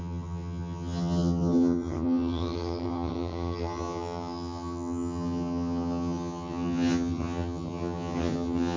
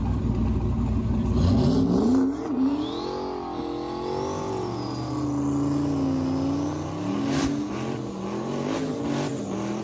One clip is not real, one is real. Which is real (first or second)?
second